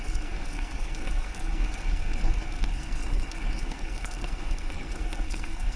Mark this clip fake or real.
fake